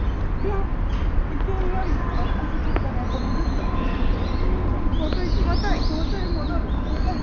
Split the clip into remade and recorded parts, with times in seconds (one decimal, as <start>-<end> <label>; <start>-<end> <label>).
0.0-7.2 recorded